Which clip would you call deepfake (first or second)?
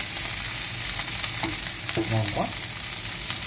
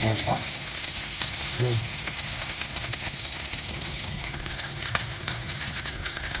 second